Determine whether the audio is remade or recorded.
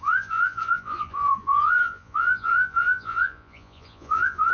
remade